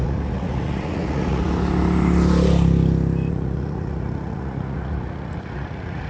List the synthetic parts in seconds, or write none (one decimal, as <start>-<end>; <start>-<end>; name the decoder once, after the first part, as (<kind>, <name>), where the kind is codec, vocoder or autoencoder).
0.0-1.4 (vocoder, Vocos); 3.3-6.1